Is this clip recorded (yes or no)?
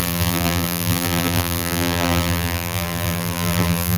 no